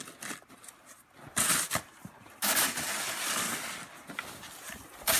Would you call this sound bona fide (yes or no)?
yes